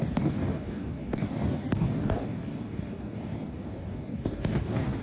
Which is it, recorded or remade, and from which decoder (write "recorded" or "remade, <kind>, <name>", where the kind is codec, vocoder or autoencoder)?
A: remade, codec, DAC